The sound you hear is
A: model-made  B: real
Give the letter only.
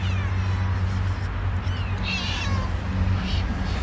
B